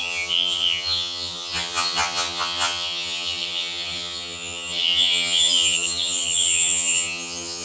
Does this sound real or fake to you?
fake